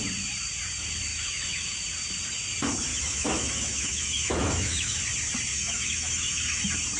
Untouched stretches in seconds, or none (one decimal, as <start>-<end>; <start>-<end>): 0.0-1.1; 1.8-2.9; 5.0-5.5; 6.6-7.0